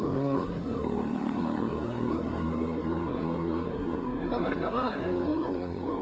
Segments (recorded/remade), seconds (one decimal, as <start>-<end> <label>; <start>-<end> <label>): 0.0-6.0 remade